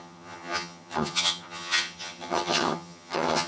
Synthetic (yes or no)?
yes